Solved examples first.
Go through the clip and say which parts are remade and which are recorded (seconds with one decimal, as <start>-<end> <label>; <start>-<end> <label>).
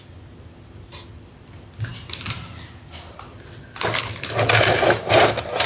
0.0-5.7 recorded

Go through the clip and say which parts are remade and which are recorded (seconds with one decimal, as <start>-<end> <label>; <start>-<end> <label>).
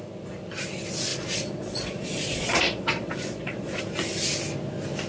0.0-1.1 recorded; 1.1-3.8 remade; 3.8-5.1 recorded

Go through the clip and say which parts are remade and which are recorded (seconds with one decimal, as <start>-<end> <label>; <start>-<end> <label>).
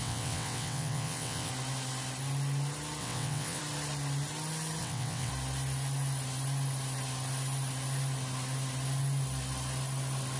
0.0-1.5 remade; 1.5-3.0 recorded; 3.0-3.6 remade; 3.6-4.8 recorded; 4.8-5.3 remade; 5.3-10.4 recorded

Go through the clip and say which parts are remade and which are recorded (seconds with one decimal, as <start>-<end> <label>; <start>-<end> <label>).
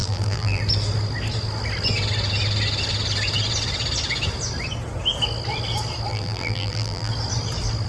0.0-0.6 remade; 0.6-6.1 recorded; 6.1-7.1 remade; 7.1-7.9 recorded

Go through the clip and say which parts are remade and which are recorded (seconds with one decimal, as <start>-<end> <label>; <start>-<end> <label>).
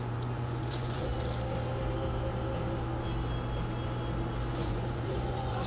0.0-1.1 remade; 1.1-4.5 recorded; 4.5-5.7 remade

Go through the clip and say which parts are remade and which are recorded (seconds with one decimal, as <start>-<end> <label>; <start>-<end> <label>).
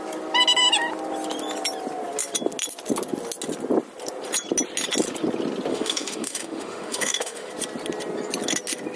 0.0-5.7 recorded; 5.7-7.5 remade; 7.5-9.0 recorded